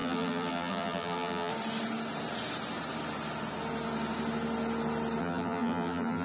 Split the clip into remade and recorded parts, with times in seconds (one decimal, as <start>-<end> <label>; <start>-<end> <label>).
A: 0.0-1.5 remade; 1.5-5.2 recorded; 5.2-6.2 remade